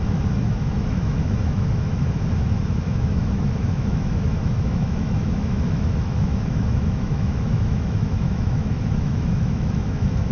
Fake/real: fake